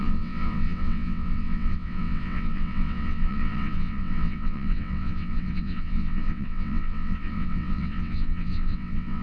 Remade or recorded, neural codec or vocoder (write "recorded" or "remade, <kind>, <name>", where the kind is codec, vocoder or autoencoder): remade, vocoder, WaveNeXt